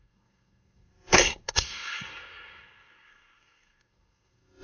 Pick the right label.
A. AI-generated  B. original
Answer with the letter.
A